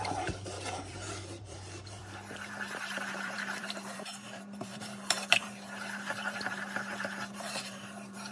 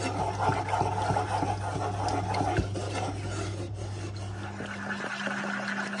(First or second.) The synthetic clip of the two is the first